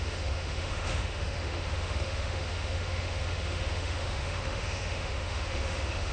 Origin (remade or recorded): remade